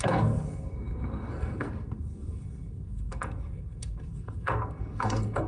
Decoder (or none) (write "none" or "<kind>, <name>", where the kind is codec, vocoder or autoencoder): codec, SNAC